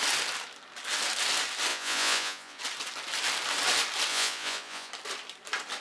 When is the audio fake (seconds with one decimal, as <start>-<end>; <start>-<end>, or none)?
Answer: 1.7-2.6; 4.1-4.9